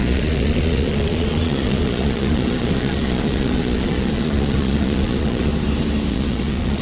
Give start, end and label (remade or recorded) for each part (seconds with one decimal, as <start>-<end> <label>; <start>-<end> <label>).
0.0-5.5 remade; 5.5-6.1 recorded; 6.1-6.8 remade